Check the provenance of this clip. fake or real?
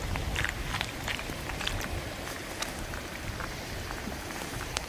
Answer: fake